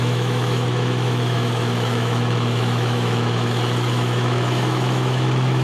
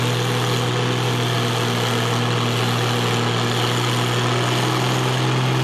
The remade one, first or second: first